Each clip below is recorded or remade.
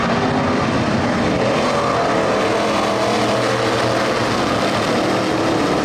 recorded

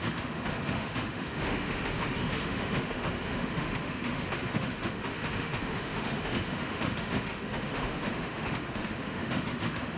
remade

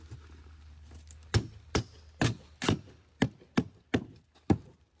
recorded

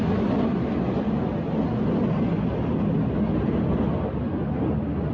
recorded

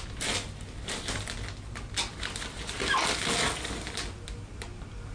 recorded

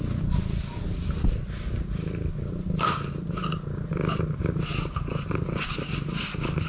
recorded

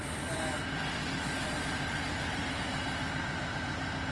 recorded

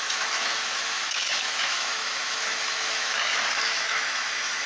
remade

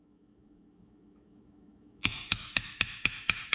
remade